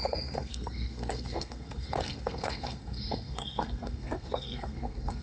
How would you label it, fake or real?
fake